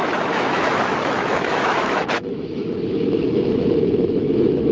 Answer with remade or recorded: remade